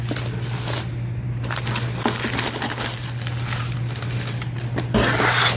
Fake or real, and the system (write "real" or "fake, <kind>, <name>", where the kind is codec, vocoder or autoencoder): real